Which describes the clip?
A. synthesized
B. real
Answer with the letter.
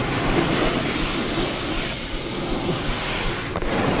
B